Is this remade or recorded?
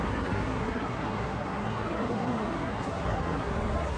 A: remade